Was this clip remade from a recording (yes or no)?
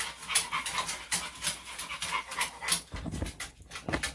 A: no